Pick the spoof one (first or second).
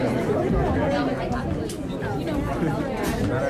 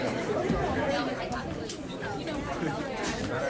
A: second